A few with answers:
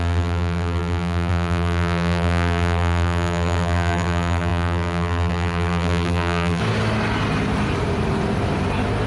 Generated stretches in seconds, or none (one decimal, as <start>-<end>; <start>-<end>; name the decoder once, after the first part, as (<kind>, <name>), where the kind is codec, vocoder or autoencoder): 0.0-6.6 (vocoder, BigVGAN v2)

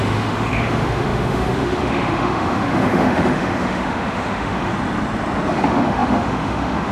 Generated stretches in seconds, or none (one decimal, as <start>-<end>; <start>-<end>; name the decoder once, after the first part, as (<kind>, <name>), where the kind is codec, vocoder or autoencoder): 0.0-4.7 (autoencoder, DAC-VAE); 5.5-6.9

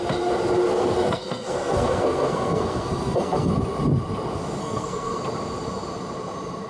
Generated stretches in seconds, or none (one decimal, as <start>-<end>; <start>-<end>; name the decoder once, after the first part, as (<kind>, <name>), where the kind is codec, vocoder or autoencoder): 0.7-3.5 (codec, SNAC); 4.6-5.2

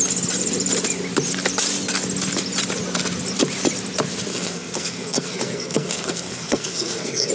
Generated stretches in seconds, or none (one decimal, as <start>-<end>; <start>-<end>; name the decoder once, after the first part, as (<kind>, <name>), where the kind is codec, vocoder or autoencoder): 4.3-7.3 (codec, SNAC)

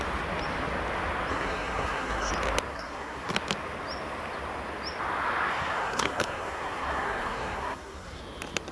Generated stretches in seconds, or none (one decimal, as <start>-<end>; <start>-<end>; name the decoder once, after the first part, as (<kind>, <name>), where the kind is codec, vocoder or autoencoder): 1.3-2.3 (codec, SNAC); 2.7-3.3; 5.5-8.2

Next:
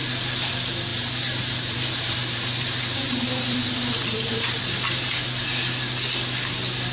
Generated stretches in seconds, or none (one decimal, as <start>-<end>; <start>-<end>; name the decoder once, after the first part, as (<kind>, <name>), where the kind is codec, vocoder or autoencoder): 0.9-4.6 (vocoder, BigVGAN v2)

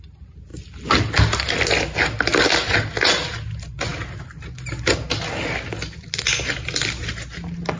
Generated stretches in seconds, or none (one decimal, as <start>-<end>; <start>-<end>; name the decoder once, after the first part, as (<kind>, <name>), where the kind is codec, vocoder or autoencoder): none

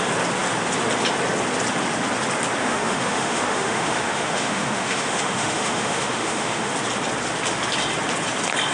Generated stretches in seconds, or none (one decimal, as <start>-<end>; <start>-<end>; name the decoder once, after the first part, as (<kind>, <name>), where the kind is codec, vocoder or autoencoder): 2.6-6.7 (autoencoder, DAC-VAE)